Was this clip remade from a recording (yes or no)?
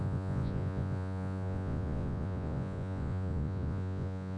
yes